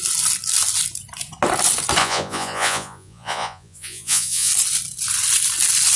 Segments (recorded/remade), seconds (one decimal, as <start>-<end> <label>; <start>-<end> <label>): 0.0-2.0 recorded; 2.0-4.5 remade; 4.5-6.0 recorded